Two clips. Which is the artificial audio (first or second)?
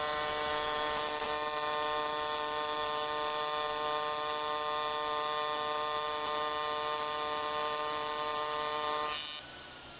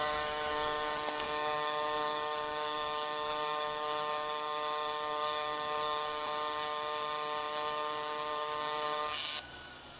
second